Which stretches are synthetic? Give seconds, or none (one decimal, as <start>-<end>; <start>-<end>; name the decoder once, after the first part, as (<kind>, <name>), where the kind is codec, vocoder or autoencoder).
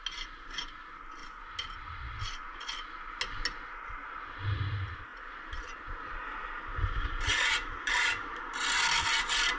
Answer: 5.1-6.6 (vocoder, BigVGAN v2); 7.3-8.4